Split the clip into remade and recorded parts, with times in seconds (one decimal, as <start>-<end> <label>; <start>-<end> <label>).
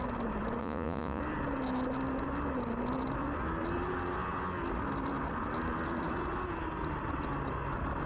0.0-0.6 recorded; 0.6-1.2 remade; 1.2-8.1 recorded